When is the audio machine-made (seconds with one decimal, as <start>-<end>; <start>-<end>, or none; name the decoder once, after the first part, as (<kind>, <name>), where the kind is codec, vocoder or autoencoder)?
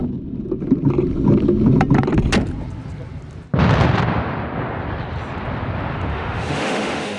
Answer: 6.1-7.2 (autoencoder, DAC-VAE)